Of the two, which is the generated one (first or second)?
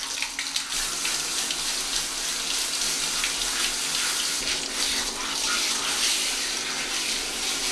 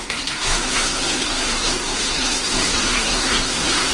second